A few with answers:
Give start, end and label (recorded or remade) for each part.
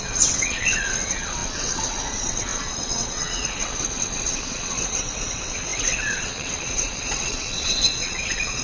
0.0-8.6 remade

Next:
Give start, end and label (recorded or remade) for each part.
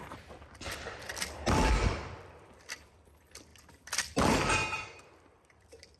0.0-6.0 remade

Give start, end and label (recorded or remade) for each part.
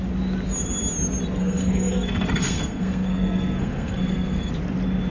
0.0-1.4 recorded; 1.4-4.5 remade; 4.5-5.1 recorded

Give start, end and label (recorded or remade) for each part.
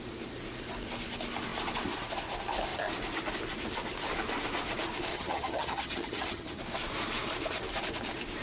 0.0-5.1 recorded; 5.1-6.6 remade; 6.6-8.4 recorded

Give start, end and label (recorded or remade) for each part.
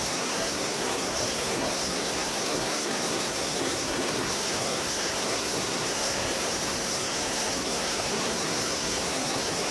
0.0-9.7 remade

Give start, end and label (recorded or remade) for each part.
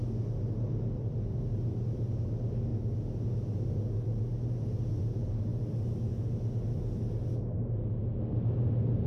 0.0-9.1 recorded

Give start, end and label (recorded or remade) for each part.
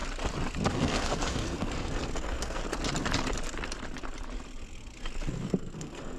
0.0-0.7 recorded; 0.7-2.6 remade; 2.6-5.3 recorded; 5.3-6.2 remade